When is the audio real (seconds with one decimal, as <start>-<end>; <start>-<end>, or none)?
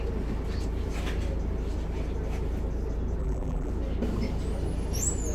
0.0-3.2; 3.7-5.3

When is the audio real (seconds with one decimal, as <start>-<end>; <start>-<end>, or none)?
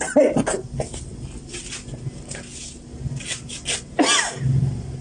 0.0-5.0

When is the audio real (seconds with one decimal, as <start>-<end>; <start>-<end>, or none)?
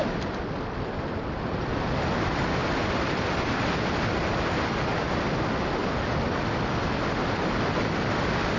0.0-8.6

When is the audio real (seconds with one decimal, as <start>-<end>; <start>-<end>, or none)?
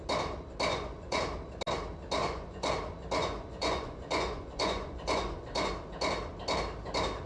0.0-0.7; 1.2-2.2; 2.7-3.2; 5.7-7.3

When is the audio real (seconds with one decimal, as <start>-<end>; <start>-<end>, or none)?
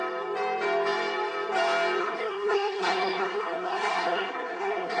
0.0-2.0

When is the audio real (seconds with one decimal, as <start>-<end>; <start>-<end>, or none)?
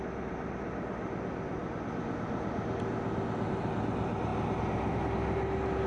0.0-5.9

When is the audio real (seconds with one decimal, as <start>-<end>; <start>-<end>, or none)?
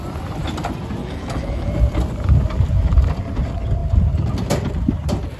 0.0-1.0; 1.7-5.4